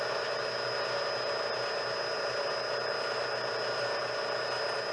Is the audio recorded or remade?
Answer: recorded